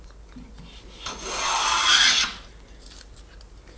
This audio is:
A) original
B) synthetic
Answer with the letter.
A